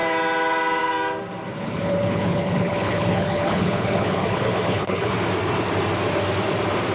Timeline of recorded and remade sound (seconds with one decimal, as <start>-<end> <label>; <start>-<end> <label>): 0.0-1.5 recorded; 1.5-5.1 remade; 5.1-6.9 recorded

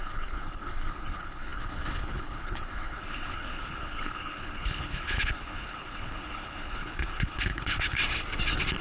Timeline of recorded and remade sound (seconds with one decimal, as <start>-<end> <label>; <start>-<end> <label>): 0.0-8.0 remade; 8.0-8.8 recorded

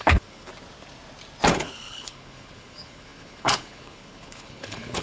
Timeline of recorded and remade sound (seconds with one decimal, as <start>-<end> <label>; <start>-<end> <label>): 0.0-0.5 remade; 0.5-1.5 recorded; 1.5-5.0 remade

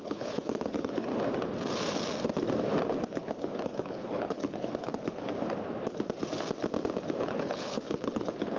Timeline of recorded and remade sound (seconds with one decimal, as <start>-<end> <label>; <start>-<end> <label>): 0.0-1.1 remade; 1.1-3.0 recorded; 3.0-5.3 remade; 5.3-7.2 recorded; 7.2-8.6 remade